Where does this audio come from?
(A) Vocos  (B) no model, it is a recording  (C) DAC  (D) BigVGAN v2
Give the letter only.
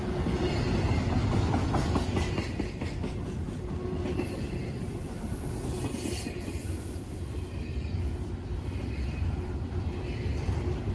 B